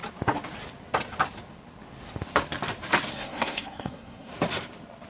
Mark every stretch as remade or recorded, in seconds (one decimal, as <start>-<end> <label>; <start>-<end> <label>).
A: 0.0-3.1 recorded; 3.1-4.3 remade; 4.3-5.1 recorded